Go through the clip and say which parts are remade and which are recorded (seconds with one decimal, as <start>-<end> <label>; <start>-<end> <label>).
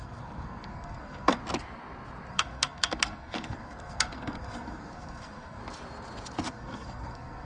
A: 0.0-1.4 remade; 1.4-2.3 recorded; 2.3-5.6 remade; 5.6-6.5 recorded; 6.5-7.5 remade